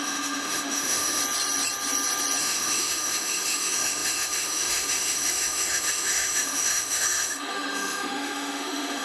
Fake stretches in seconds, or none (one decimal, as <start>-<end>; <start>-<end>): 0.0-1.2; 2.4-9.0